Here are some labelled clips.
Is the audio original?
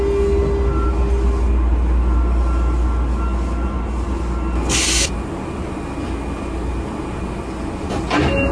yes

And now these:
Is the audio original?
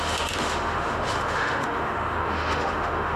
no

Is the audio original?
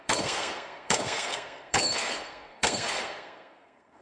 no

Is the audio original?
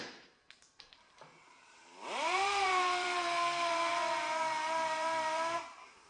no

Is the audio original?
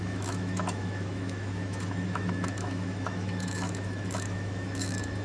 no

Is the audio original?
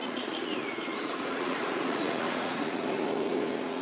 no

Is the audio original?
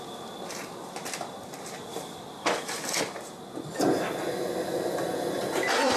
yes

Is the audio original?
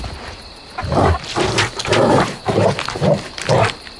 yes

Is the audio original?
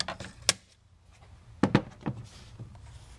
yes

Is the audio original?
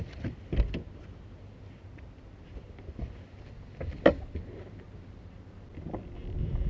yes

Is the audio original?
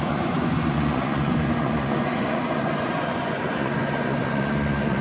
no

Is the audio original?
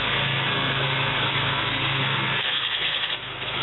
no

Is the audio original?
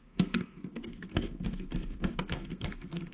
no